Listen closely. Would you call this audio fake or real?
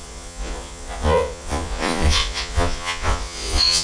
fake